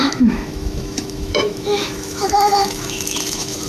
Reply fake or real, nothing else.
fake